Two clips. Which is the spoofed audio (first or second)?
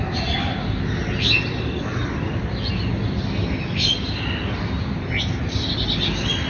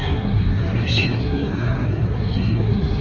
second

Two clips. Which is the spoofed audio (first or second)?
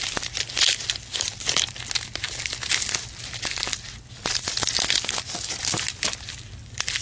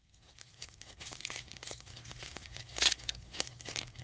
second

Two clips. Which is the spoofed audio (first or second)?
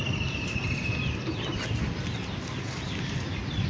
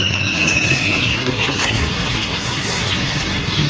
second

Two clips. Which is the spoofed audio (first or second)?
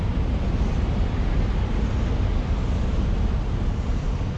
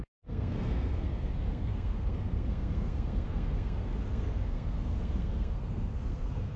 second